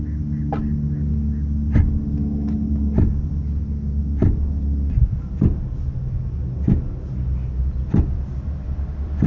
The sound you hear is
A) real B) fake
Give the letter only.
A